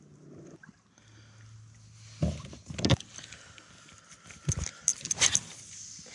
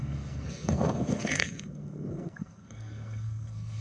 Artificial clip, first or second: second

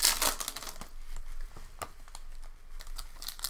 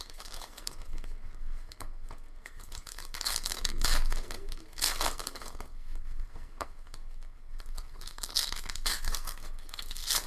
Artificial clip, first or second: second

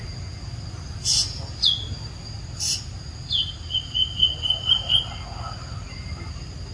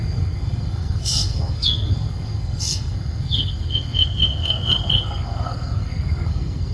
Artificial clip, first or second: second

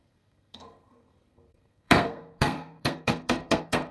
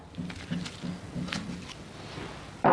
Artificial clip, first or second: first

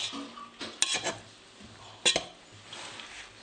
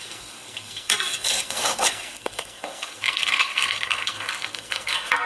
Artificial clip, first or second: second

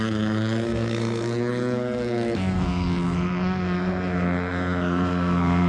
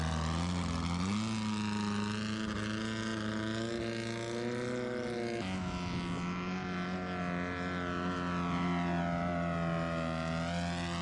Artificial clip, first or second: first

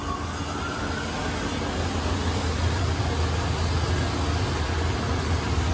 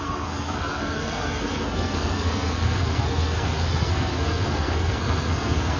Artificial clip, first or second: second